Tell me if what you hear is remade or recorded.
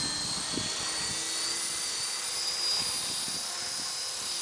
recorded